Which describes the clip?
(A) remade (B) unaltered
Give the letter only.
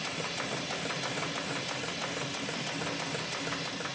B